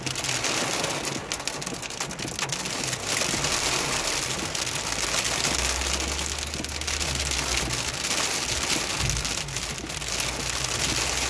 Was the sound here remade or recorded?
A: recorded